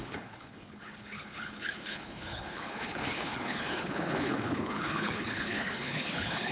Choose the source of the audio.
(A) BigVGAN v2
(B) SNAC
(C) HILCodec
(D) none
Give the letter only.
C